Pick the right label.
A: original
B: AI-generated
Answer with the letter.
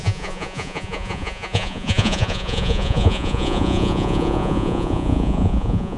B